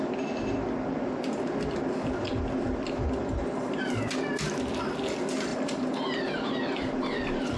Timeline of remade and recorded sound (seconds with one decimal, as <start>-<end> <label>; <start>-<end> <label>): 0.0-3.2 recorded; 3.2-3.9 remade; 3.9-5.5 recorded; 5.5-6.5 remade; 6.5-7.6 recorded